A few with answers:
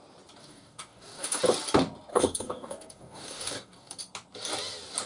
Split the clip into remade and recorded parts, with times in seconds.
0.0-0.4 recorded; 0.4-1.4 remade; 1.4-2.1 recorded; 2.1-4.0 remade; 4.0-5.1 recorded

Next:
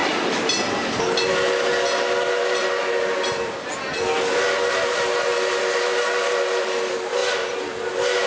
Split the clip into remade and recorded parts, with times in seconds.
0.0-8.3 recorded

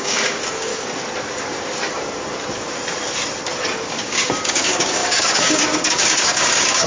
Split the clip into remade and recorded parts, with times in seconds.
0.0-0.7 remade; 0.7-3.9 recorded; 3.9-6.9 remade